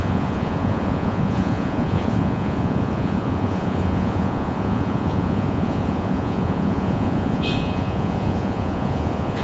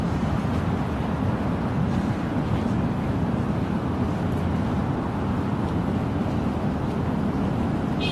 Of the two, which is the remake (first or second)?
first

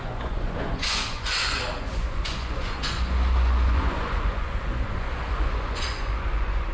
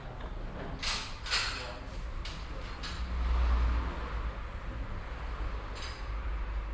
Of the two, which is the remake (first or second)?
first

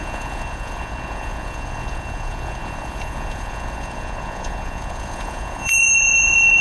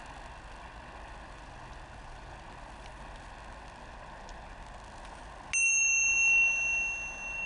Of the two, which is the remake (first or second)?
first